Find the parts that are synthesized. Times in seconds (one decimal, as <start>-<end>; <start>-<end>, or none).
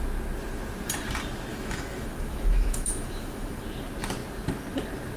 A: 1.5-3.6